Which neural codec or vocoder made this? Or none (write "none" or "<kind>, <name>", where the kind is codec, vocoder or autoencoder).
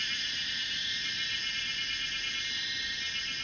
none